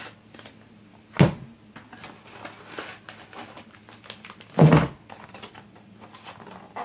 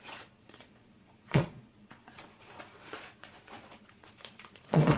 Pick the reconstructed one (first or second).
second